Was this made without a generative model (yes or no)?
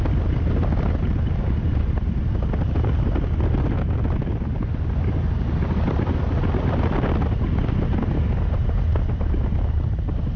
yes